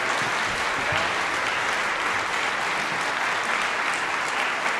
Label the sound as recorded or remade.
recorded